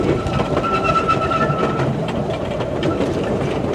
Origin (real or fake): fake